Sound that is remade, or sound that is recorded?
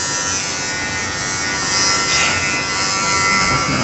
recorded